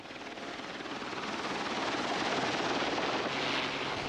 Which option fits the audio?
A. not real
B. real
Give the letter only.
B